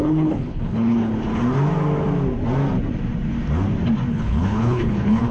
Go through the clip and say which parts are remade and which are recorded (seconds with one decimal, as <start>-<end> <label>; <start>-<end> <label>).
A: 0.0-1.1 remade; 1.1-4.1 recorded; 4.1-5.3 remade